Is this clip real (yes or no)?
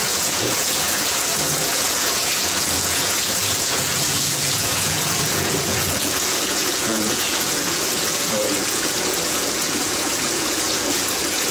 no